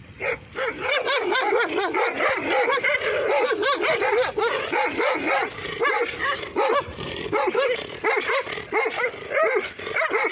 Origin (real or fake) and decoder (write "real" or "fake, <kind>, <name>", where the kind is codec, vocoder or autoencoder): real